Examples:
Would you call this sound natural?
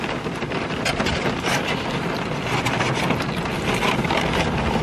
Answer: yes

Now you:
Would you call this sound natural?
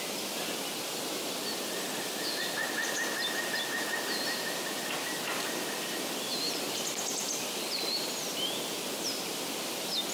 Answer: yes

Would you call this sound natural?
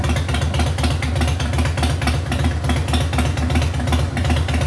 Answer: yes